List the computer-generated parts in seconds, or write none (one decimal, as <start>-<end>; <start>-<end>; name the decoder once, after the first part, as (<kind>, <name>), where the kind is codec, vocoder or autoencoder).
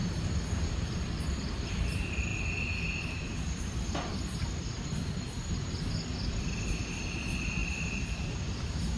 0.0-1.2 (vocoder, BigVGAN v2); 7.6-8.4